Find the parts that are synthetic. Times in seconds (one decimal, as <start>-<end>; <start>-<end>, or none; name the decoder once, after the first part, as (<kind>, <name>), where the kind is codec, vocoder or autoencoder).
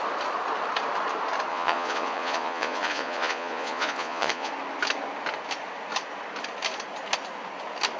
1.5-4.5 (vocoder, Vocos)